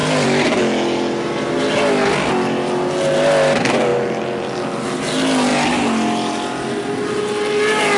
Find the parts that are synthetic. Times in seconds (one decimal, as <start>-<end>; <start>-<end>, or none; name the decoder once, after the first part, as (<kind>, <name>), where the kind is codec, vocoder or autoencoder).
0.0-0.6 (vocoder, BigVGAN v2); 3.9-4.5